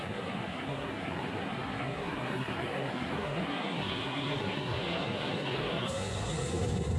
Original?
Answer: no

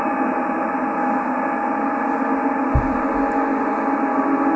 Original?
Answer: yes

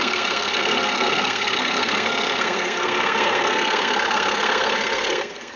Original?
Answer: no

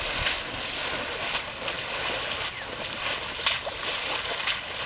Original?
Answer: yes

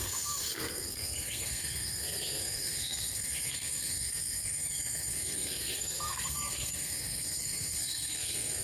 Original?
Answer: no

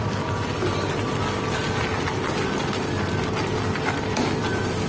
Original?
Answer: yes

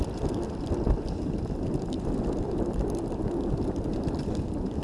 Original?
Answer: yes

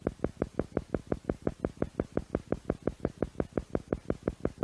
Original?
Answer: yes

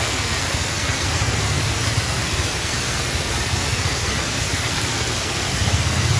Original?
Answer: no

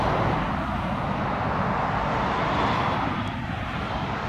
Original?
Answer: yes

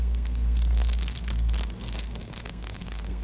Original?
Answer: no